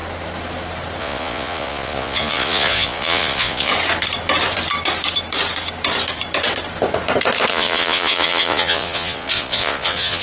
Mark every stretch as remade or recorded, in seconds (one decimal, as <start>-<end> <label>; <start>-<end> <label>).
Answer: 0.0-1.0 recorded; 1.0-3.7 remade; 3.7-7.5 recorded; 7.5-10.2 remade